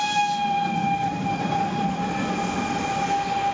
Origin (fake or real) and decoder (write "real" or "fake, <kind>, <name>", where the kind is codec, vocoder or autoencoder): real